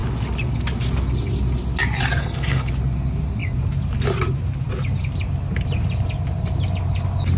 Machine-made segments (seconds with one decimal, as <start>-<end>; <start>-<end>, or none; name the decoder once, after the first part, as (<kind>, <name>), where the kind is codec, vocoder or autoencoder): 2.2-2.7 (codec, SNAC)